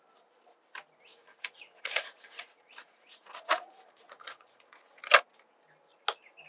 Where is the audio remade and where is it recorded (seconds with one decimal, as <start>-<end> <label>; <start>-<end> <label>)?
0.0-1.1 recorded; 1.1-5.0 remade; 5.0-6.5 recorded